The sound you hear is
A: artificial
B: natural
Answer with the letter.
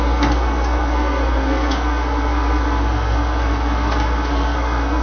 A